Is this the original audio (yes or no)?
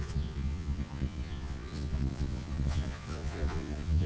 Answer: no